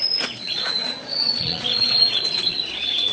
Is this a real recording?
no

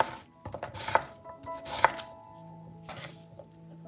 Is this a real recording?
yes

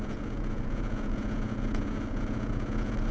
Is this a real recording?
no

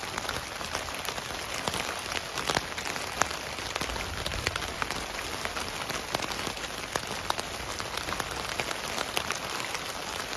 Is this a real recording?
yes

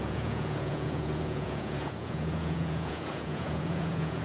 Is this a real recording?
no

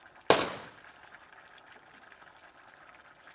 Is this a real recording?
yes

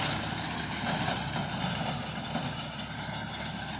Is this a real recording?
yes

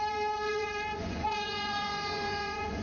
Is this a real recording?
no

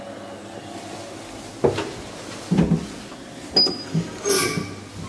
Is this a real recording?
yes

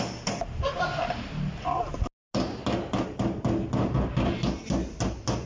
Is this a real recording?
yes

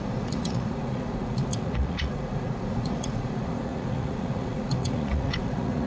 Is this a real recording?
no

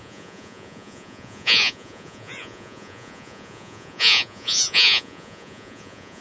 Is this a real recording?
no